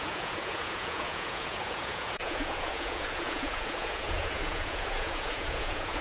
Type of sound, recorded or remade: remade